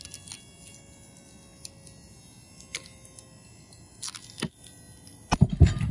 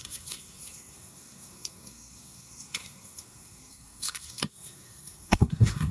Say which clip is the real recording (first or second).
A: first